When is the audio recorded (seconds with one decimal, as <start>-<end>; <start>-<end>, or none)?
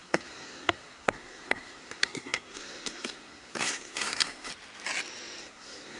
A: 4.5-5.4